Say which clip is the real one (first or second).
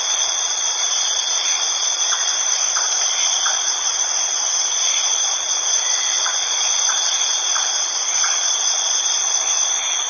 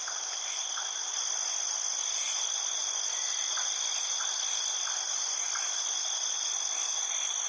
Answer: second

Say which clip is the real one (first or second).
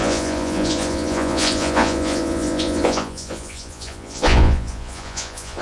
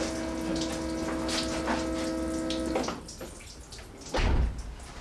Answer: second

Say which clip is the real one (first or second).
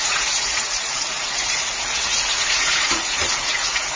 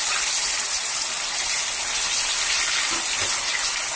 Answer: second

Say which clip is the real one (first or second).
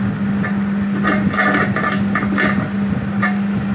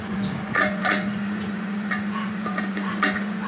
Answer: first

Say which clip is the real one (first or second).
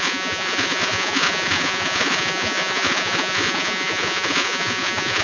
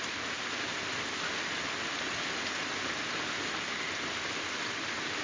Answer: second